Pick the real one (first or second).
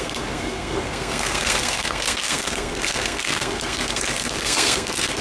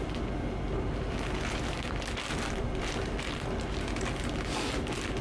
second